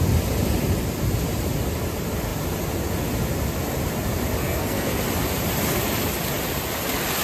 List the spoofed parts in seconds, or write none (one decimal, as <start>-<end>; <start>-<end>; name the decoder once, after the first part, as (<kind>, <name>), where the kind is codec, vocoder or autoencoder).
4.4-5.0 (codec, SNAC)